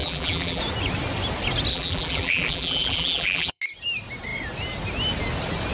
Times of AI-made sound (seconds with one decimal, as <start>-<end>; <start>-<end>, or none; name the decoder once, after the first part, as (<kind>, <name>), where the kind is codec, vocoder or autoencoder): 0.0-0.6 (vocoder, BigVGAN v2); 1.7-3.6